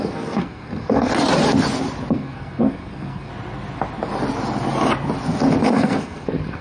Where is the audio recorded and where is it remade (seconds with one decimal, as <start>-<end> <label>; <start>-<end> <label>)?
0.0-1.1 remade; 1.1-2.1 recorded; 2.1-3.3 remade; 3.3-5.7 recorded; 5.7-6.6 remade